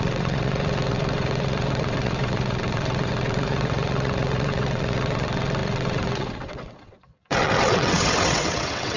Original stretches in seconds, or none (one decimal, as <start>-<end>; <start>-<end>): none